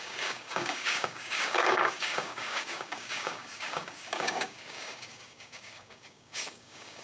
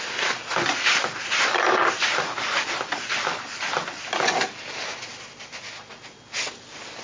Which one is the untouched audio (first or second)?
second